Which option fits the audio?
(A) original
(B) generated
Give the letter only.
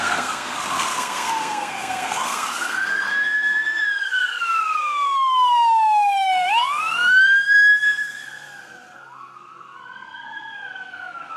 B